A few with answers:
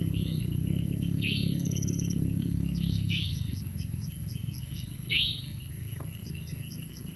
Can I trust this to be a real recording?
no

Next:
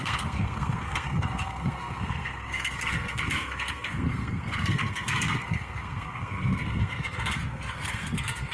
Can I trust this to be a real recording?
no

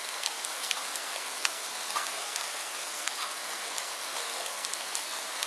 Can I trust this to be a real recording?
no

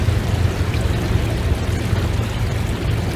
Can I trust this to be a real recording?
yes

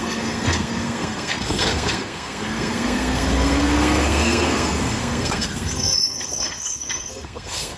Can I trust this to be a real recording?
no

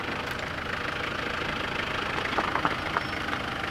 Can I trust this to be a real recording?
yes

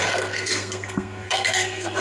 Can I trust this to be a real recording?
no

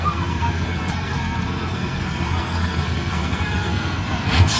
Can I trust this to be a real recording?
no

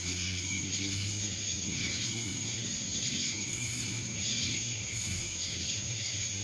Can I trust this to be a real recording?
no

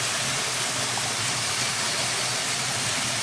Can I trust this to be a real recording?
yes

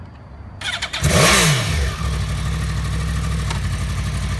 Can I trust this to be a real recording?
yes